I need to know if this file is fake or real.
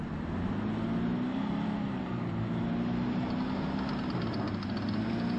real